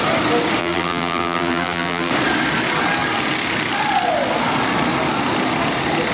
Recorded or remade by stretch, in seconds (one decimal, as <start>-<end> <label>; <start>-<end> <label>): 0.0-0.6 recorded; 0.6-2.1 remade; 2.1-6.1 recorded